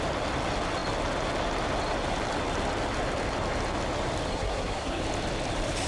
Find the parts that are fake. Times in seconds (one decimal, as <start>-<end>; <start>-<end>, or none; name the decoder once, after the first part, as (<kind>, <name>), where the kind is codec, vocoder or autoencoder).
4.3-5.0 (codec, SNAC)